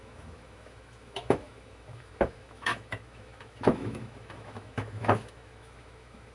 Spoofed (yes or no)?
yes